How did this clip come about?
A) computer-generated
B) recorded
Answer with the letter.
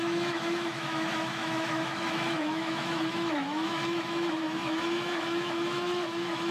A